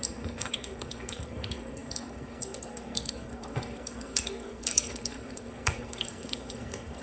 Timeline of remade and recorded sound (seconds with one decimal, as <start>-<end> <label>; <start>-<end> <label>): 0.0-7.0 remade